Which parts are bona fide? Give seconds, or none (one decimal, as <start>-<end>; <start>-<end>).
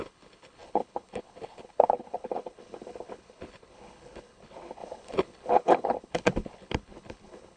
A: none